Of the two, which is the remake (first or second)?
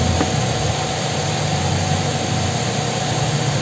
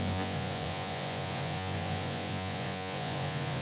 second